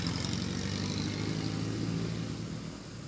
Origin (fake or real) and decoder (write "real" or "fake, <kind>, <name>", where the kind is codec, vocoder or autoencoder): real